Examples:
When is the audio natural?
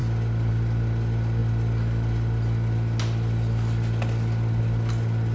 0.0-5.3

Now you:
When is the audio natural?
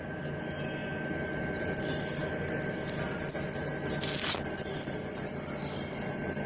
0.0-6.5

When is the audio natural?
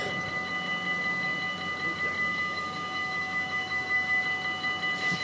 0.0-2.3; 4.2-5.2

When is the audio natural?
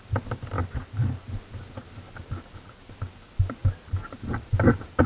0.0-5.1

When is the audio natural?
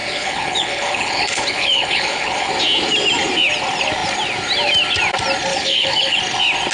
2.5-5.5; 6.2-6.7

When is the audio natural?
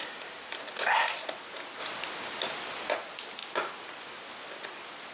1.3-1.8; 2.9-3.4; 4.1-5.1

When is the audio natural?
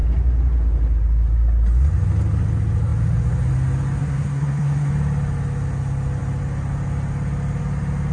0.0-4.0; 4.9-8.1